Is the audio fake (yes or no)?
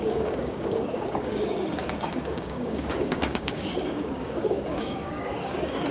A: yes